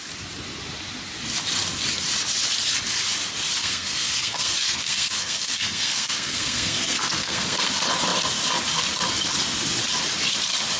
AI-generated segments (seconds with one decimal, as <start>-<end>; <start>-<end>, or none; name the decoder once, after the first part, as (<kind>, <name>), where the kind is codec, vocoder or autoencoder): 3.6-7.7 (codec, SNAC)